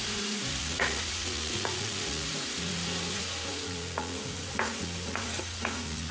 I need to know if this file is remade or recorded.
remade